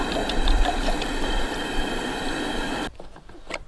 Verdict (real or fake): real